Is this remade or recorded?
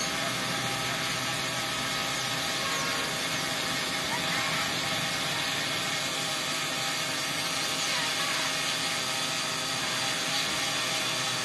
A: recorded